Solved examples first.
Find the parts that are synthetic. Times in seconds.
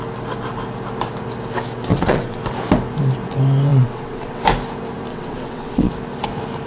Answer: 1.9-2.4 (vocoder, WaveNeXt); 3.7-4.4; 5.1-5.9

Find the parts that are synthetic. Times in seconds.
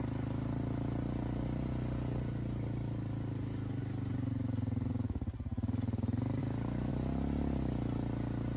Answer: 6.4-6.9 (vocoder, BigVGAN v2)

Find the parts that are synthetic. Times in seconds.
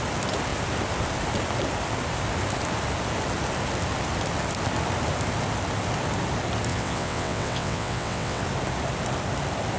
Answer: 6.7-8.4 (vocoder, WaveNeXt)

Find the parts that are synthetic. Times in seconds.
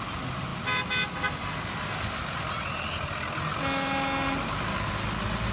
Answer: none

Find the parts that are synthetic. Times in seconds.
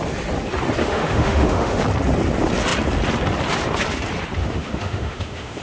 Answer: 0.8-1.8 (autoencoder, DAC-VAE); 4.4-5.6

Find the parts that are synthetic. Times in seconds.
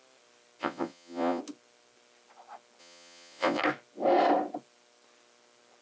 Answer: 0.6-1.4 (vocoder, Vocos); 2.8-3.6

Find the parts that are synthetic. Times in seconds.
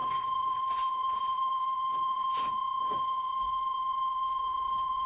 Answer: 0.0-5.1 (vocoder, Vocos)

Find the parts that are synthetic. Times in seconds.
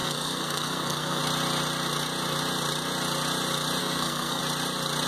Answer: 0.0-1.2 (codec, SNAC); 3.8-4.4